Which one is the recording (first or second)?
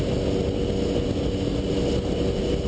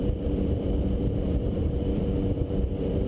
first